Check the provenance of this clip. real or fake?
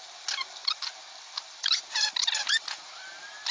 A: real